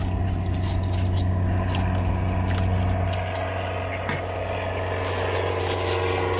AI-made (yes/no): no